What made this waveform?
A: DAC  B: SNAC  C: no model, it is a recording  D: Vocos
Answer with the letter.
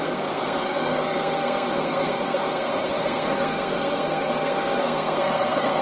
B